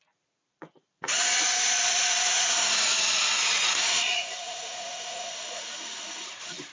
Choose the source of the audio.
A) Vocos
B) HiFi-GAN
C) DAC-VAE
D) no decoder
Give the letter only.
A